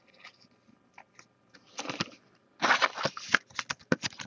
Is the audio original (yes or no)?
yes